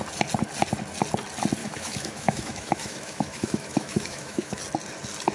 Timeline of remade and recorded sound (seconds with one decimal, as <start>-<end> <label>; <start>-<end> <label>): 0.0-1.6 recorded; 1.6-4.6 remade; 4.6-5.3 recorded